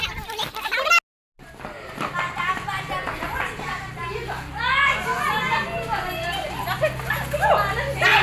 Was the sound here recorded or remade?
recorded